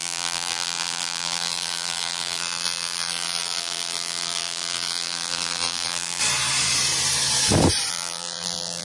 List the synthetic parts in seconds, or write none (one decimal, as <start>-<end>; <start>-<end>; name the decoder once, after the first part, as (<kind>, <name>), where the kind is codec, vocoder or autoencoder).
0.0-6.2 (vocoder, BigVGAN v2); 7.9-8.8